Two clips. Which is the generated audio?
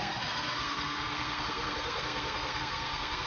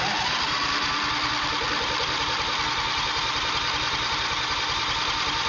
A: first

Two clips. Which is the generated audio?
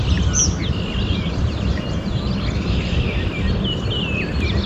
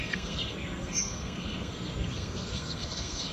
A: second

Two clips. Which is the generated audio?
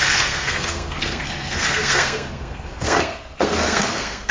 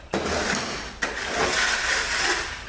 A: first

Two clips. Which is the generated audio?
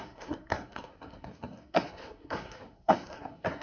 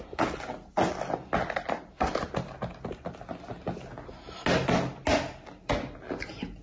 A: first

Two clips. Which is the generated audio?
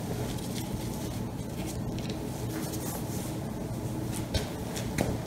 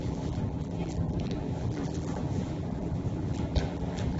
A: second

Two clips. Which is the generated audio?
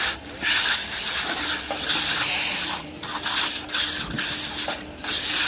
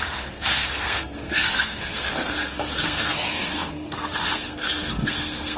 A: second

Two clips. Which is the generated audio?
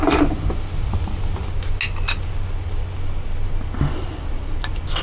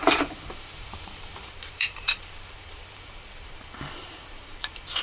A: second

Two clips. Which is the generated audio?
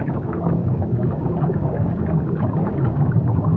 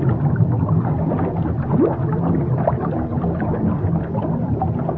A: first